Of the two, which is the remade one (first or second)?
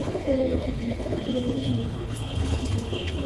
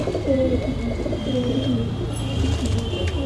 first